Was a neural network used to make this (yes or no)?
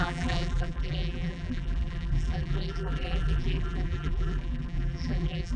yes